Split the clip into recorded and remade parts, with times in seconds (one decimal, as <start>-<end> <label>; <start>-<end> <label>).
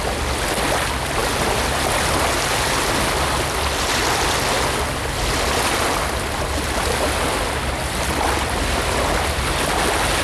0.0-10.2 recorded